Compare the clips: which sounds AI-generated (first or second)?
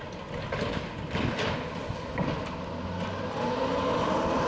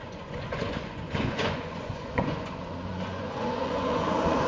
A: second